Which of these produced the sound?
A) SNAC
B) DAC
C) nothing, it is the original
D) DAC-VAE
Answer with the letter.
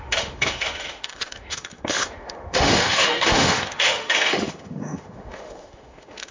D